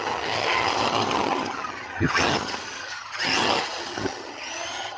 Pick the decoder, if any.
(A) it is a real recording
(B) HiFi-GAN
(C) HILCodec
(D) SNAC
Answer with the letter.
B